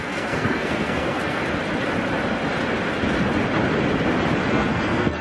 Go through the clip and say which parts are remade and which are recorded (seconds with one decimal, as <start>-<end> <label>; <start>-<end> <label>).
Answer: 0.0-1.4 remade; 1.4-4.5 recorded; 4.5-5.2 remade